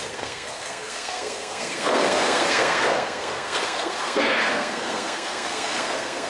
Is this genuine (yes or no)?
no